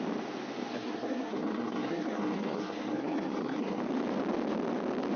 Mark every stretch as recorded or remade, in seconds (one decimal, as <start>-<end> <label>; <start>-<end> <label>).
0.0-0.7 recorded; 0.7-3.8 remade; 3.8-5.2 recorded